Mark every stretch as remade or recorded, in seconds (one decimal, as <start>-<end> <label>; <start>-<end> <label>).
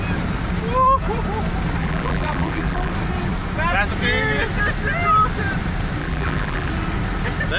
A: 0.0-1.8 recorded; 1.8-2.9 remade; 2.9-6.0 recorded; 6.0-6.7 remade; 6.7-7.6 recorded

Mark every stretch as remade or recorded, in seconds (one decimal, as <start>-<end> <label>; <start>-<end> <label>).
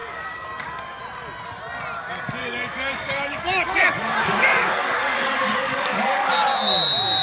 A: 0.0-1.0 remade; 1.0-2.4 recorded; 2.4-6.3 remade; 6.3-7.2 recorded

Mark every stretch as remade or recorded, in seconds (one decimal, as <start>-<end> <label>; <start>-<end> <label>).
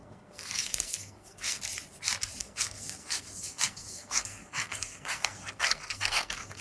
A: 0.0-1.6 remade; 1.6-2.4 recorded; 2.4-6.6 remade